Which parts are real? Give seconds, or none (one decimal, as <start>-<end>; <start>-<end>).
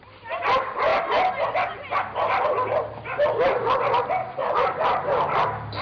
0.0-4.4